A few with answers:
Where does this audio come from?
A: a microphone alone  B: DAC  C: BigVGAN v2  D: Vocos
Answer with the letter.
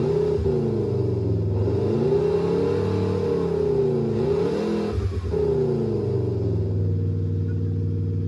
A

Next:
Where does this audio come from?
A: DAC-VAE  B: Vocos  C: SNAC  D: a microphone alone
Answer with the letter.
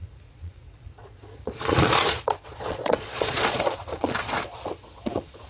B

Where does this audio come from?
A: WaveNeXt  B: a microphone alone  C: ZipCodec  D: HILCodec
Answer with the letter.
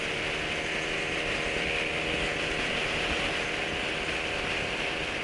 B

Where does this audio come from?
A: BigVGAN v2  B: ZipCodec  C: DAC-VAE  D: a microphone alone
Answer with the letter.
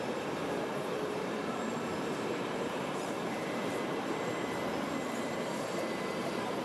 A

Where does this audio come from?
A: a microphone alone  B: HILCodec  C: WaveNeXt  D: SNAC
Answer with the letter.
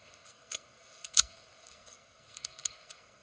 D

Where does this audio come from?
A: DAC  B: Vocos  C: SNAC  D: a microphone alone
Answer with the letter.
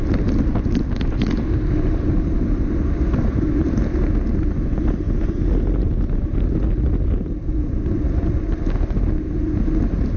D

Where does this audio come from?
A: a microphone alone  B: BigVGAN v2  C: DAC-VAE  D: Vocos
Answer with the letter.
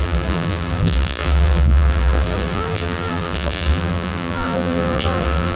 B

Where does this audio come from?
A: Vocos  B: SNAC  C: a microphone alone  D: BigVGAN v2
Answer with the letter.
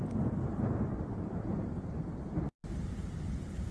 D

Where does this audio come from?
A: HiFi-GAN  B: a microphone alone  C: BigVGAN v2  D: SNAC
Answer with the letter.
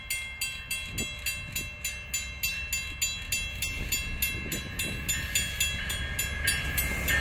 B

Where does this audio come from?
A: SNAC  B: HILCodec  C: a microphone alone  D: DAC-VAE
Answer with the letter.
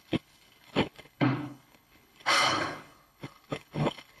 B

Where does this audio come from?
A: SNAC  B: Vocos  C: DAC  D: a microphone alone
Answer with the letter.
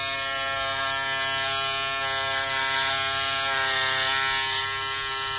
D